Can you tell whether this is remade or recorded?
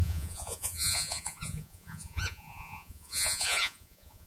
remade